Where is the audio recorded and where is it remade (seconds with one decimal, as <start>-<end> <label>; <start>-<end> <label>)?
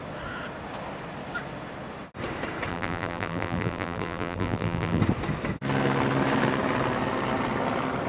0.0-2.7 recorded; 2.7-5.0 remade; 5.0-8.1 recorded